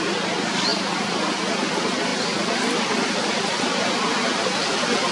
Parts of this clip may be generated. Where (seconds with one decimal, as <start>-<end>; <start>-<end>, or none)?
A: none